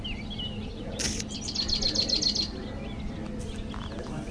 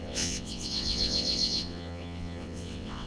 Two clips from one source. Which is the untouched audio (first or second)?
first